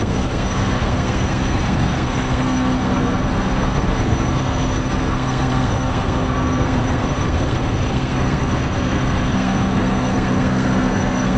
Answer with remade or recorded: remade